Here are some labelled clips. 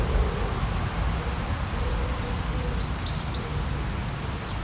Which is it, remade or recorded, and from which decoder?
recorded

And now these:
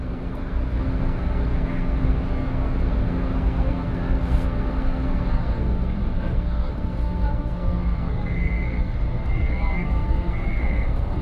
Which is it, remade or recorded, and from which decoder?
remade, codec, SNAC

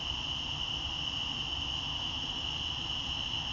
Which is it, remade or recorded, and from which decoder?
recorded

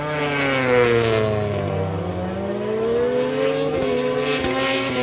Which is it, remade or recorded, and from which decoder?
recorded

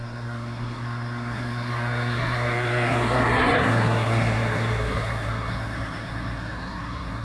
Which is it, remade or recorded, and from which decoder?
remade, codec, SNAC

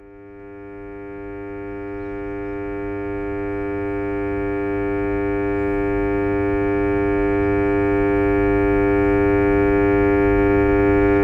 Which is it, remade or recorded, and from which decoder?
recorded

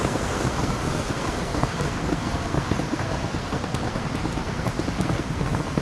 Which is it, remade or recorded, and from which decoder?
remade, codec, SNAC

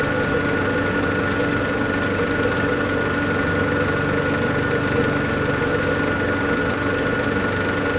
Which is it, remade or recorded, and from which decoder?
recorded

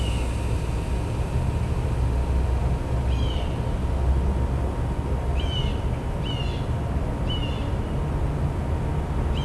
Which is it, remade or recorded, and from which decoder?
recorded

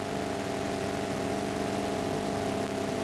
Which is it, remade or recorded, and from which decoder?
recorded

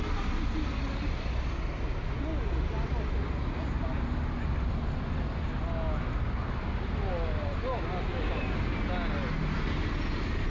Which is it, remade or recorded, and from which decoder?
recorded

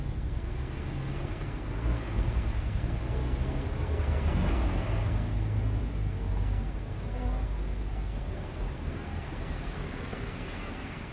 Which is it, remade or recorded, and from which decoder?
remade, codec, SNAC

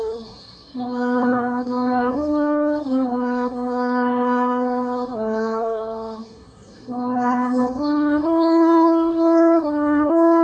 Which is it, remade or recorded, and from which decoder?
remade, codec, SNAC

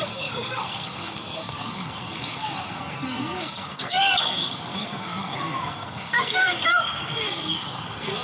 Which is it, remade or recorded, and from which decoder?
remade, codec, SNAC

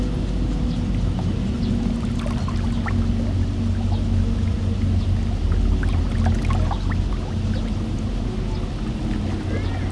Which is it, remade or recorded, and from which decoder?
recorded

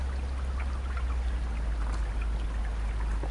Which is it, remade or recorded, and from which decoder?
recorded